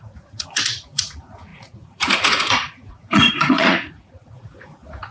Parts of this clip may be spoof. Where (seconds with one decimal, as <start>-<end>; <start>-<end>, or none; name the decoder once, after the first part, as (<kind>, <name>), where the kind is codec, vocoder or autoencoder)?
0.0-5.1 (vocoder, Vocos)